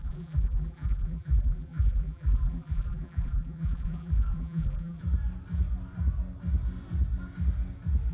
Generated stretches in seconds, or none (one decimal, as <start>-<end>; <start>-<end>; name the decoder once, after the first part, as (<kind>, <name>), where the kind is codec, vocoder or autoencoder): 0.0-5.0 (vocoder, BigVGAN v2)